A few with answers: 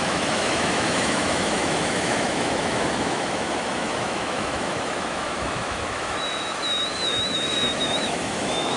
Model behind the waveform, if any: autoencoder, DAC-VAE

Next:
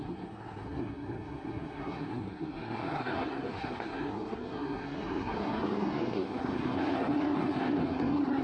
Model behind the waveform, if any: codec, SNAC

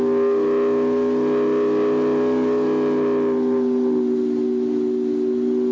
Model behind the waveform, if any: none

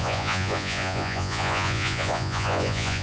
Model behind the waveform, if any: vocoder, Vocos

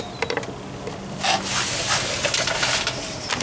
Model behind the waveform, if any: none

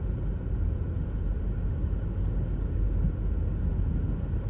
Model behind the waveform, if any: none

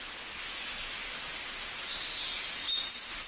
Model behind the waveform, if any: none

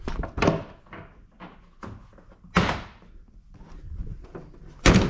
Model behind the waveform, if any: none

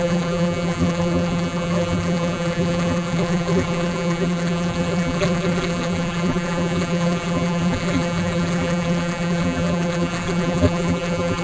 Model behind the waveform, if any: vocoder, BigVGAN v2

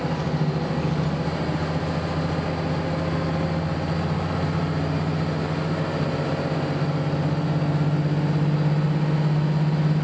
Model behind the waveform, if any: none